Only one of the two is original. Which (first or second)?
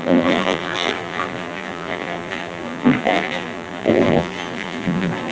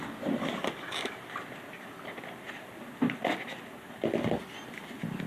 second